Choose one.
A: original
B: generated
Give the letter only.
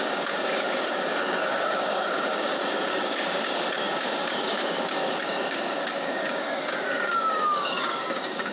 B